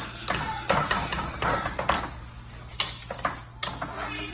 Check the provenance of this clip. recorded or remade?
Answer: recorded